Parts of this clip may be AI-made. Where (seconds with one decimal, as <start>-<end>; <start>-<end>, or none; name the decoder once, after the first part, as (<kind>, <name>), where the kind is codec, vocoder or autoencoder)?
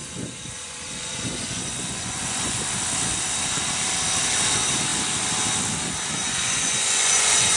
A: 0.0-2.6 (vocoder, Vocos); 6.2-7.6